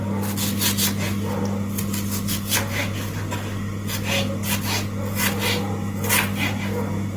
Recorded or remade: recorded